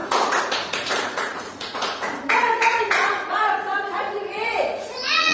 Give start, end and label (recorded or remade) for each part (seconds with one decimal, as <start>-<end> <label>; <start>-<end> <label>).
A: 0.0-5.3 remade